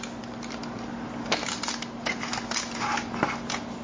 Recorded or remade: recorded